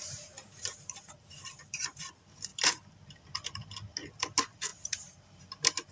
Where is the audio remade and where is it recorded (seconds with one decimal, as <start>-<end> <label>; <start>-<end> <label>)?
0.0-2.1 remade; 2.1-2.5 recorded; 2.5-3.2 remade; 3.2-4.7 recorded; 4.7-5.9 remade